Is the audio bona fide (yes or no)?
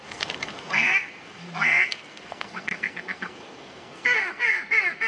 no